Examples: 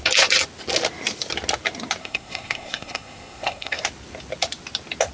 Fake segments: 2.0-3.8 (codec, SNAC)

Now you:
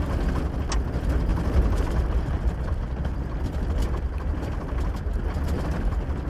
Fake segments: 1.3-5.0 (vocoder, BigVGAN v2)

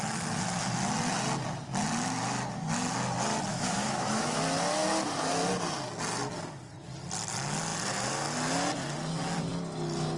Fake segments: 3.5-4.2 (autoencoder, DAC-VAE)

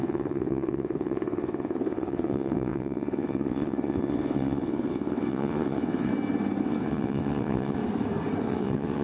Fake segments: 0.0-6.1 (vocoder, WaveNeXt); 6.6-7.8; 8.4-9.0

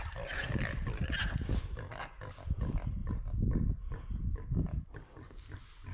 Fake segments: none